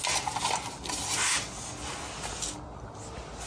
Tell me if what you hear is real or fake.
real